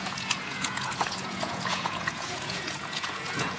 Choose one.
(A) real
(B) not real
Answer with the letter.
B